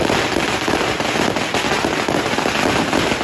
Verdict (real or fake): real